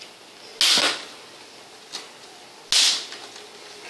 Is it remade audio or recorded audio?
recorded